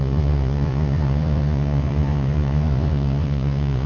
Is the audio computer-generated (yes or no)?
yes